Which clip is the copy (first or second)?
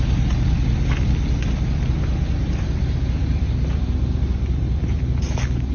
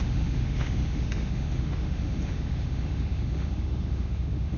second